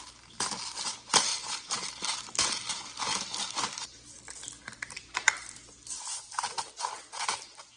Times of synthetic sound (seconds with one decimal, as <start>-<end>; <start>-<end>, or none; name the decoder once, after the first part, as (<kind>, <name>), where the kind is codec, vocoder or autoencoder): 1.3-1.9 (vocoder, BigVGAN v2); 3.1-6.6